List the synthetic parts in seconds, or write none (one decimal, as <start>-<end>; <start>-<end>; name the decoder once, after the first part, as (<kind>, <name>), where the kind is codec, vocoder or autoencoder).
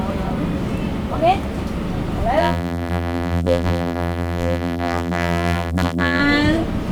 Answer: 2.4-6.2 (vocoder, BigVGAN v2)